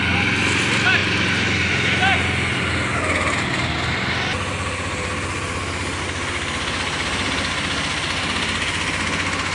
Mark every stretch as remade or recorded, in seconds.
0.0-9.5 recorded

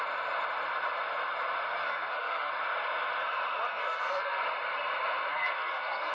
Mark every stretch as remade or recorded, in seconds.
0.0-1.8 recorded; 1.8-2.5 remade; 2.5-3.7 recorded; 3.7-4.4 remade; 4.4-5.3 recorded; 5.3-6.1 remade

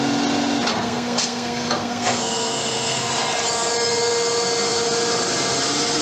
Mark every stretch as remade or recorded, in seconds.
0.0-0.7 recorded; 0.7-3.1 remade; 3.1-6.0 recorded